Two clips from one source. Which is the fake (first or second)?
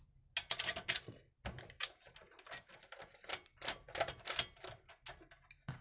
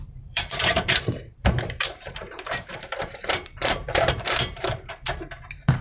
second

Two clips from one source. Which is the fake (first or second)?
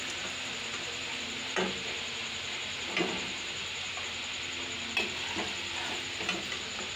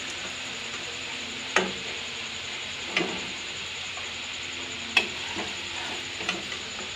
second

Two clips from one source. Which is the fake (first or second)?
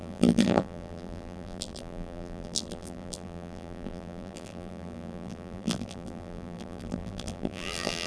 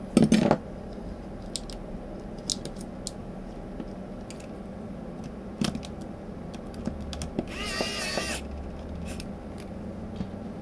first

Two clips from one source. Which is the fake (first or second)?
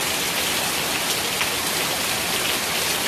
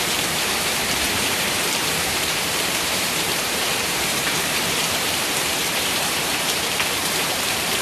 second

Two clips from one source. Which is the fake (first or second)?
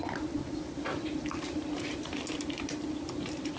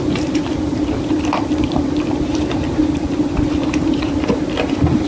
second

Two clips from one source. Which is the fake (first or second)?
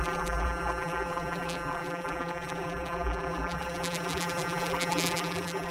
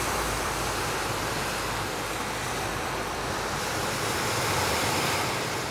first